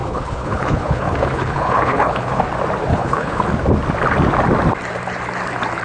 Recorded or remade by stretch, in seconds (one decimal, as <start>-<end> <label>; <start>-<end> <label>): 0.0-2.4 remade; 2.4-2.9 recorded; 2.9-3.4 remade; 3.4-5.8 recorded

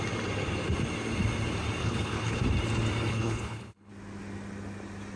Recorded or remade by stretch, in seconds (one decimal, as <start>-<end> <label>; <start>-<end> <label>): 0.0-1.8 recorded; 1.8-2.4 remade; 2.4-3.1 recorded; 3.1-3.9 remade; 3.9-5.2 recorded

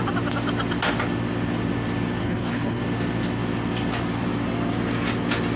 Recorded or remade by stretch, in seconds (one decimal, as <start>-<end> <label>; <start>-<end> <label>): 0.0-2.2 recorded; 2.2-2.8 remade; 2.8-5.6 recorded

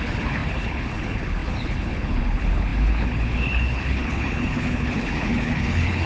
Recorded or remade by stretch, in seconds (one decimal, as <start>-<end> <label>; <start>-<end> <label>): 0.0-6.1 remade

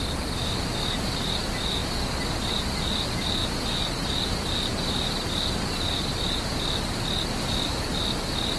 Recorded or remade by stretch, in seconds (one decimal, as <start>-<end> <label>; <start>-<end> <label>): 0.0-8.6 recorded

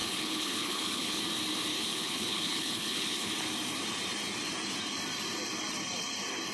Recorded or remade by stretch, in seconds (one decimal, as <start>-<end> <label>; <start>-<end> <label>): 0.0-1.2 remade; 1.2-1.7 recorded; 1.7-3.3 remade; 3.3-6.5 recorded

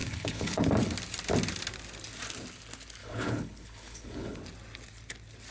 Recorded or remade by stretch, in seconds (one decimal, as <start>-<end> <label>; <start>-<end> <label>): 0.0-0.7 remade; 0.7-3.0 recorded; 3.0-4.4 remade; 4.4-5.5 recorded

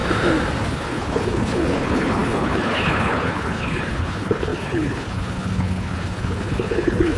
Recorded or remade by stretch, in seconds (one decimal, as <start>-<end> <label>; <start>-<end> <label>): 0.0-0.7 recorded; 0.7-7.2 remade